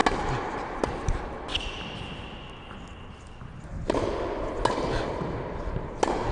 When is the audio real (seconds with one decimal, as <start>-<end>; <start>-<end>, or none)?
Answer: 0.0-6.3